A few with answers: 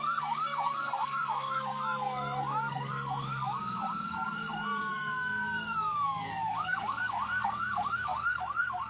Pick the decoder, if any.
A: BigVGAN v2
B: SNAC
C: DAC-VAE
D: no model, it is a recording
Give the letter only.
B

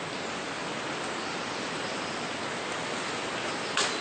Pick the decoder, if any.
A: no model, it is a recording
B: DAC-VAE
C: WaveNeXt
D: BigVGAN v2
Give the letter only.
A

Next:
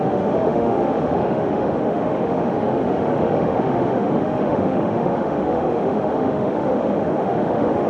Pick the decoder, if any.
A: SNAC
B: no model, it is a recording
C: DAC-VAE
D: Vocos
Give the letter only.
C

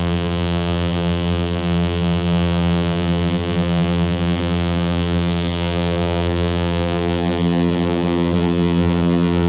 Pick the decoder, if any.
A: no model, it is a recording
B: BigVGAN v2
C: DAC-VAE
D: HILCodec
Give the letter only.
B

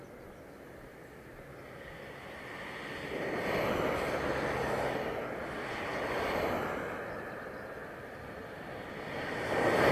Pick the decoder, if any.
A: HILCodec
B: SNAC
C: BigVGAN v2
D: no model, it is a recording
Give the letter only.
D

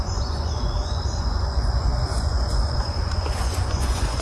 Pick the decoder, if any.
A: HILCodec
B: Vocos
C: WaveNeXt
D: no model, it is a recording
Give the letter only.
B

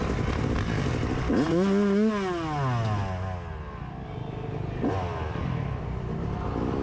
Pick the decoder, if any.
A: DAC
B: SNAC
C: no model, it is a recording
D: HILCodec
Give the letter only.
C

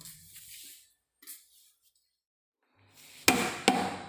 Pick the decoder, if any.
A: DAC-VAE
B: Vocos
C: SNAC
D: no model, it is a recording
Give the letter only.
D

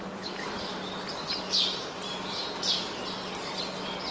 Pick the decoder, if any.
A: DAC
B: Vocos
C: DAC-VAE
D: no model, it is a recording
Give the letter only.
D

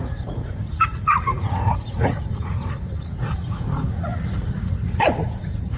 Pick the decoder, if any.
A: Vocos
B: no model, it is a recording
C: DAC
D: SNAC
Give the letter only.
A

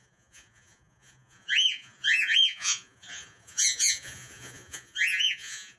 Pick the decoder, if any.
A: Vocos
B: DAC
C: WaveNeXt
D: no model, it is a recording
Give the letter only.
A